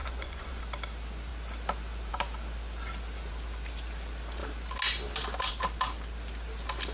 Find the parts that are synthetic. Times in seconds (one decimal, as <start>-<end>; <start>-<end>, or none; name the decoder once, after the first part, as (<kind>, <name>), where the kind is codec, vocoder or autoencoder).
0.0-0.6 (vocoder, Vocos)